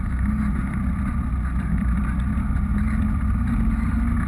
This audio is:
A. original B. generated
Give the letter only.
A